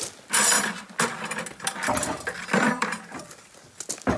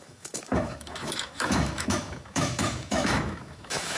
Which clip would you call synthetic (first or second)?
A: second